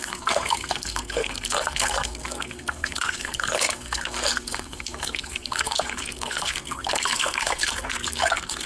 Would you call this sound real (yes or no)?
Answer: no